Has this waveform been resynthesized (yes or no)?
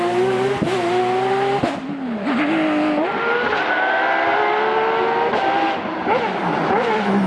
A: no